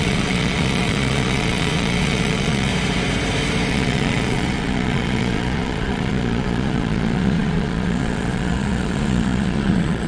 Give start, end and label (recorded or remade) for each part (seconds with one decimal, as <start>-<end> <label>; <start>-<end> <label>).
0.0-2.7 remade; 2.7-3.7 recorded; 3.7-10.1 remade